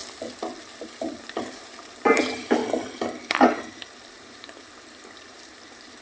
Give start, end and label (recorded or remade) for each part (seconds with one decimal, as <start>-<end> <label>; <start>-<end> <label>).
0.0-0.8 recorded; 0.8-2.6 remade; 2.6-4.2 recorded; 4.2-6.0 remade